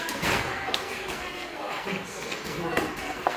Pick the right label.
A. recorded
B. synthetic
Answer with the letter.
B